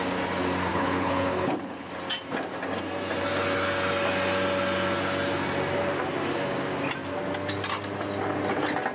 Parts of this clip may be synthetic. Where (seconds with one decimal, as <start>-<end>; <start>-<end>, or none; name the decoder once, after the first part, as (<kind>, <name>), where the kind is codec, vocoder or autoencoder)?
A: 0.7-1.9 (codec, HILCodec)